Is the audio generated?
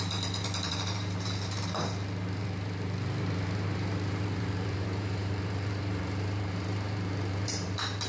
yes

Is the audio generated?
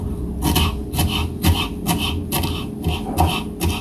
no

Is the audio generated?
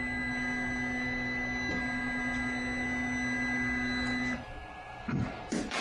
no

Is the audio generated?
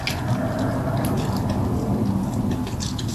no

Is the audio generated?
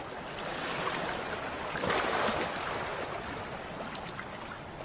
no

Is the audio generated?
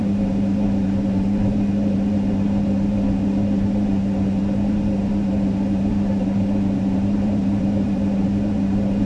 yes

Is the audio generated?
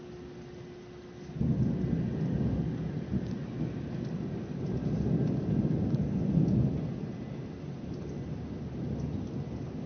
no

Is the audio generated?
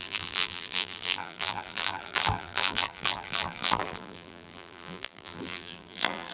yes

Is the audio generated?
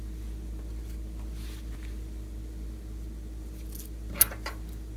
no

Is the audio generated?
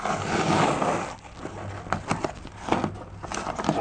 no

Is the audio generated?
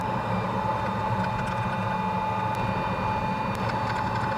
no